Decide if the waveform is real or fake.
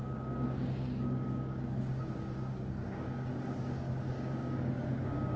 fake